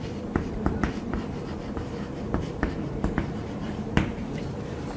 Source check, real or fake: fake